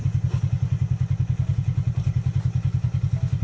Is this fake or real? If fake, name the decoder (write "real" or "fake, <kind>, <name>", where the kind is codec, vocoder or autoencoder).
real